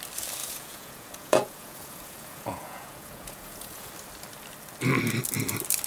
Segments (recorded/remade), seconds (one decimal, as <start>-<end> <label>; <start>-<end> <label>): 0.0-0.4 recorded; 0.4-3.9 remade; 3.9-5.9 recorded